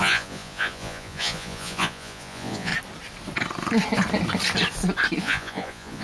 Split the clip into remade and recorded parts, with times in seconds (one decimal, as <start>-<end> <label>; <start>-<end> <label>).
0.0-2.7 remade; 2.7-5.2 recorded; 5.2-6.0 remade